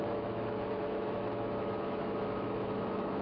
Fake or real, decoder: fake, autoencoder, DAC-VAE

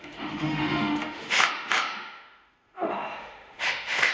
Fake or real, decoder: fake, autoencoder, DAC-VAE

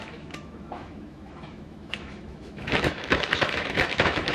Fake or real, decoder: fake, autoencoder, DAC-VAE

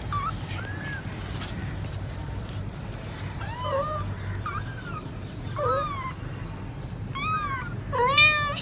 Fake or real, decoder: real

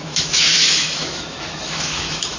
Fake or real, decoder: fake, autoencoder, DAC-VAE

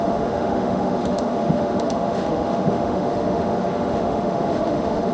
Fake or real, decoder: fake, autoencoder, DAC-VAE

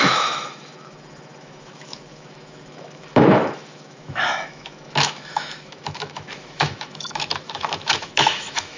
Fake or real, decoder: fake, autoencoder, DAC-VAE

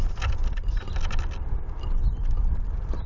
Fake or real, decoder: real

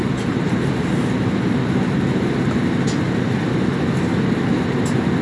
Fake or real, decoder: real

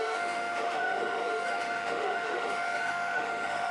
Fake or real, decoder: fake, autoencoder, DAC-VAE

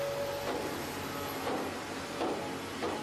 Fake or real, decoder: real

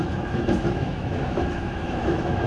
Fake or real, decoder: fake, autoencoder, DAC-VAE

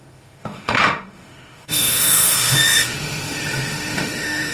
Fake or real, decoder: fake, autoencoder, DAC-VAE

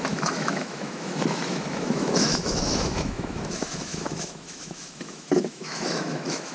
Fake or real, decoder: fake, autoencoder, DAC-VAE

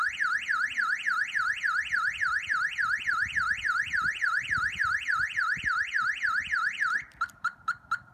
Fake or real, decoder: real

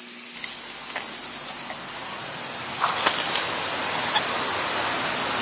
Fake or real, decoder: real